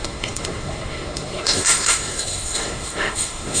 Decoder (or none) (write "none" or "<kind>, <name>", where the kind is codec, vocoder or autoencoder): codec, SNAC